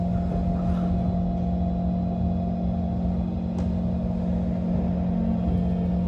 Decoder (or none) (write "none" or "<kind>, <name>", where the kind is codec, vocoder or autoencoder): none